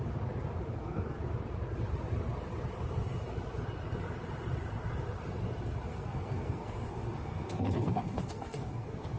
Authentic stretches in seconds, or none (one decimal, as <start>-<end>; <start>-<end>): 0.0-0.7; 1.2-5.9